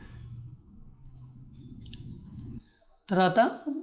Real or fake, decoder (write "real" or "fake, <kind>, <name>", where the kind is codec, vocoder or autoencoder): fake, autoencoder, DAC-VAE